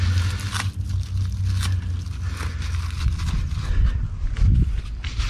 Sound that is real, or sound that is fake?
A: real